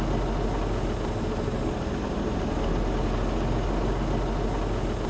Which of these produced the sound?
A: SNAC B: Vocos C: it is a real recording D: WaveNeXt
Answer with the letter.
C